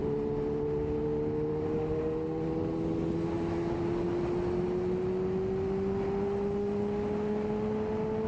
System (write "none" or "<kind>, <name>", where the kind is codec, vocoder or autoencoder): none